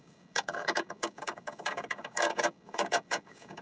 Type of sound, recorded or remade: remade